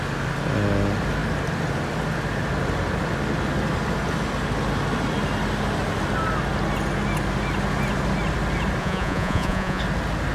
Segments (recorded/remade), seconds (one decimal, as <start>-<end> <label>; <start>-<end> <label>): 0.0-8.8 recorded; 8.8-9.8 remade; 9.8-10.3 recorded